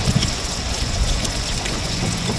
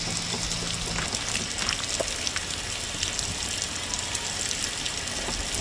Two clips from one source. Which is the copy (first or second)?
first